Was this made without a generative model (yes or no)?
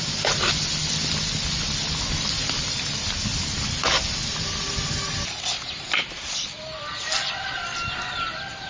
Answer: yes